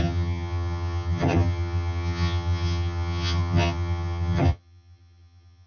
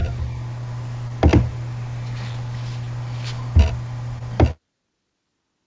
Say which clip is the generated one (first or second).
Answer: first